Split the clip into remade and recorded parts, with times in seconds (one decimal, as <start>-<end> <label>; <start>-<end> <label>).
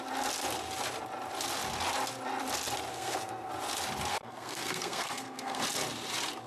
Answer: 0.0-2.9 recorded; 2.9-3.5 remade; 3.5-4.1 recorded; 4.1-5.6 remade; 5.6-6.5 recorded